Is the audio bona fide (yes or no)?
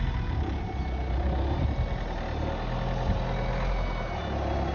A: yes